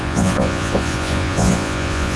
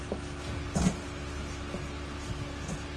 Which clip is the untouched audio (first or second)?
second